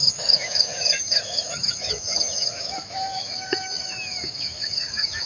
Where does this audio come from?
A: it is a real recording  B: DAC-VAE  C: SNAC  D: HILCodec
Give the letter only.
B